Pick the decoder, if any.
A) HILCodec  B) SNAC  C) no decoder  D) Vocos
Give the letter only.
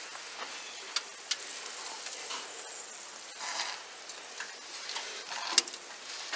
C